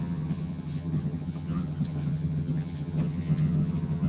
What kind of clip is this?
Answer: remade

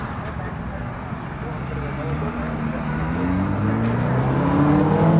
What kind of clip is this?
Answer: recorded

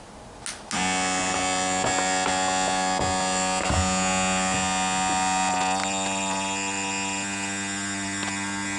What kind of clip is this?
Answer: recorded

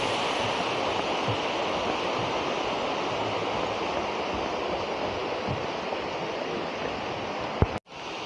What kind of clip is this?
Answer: recorded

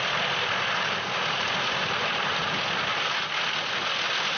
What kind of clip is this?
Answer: recorded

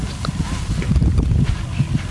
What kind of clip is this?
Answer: recorded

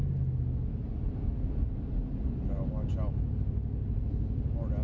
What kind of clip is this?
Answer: recorded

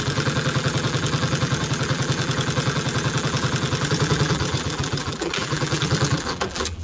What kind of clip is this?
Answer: remade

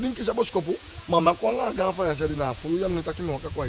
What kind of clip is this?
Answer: remade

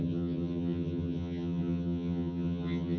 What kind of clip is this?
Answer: remade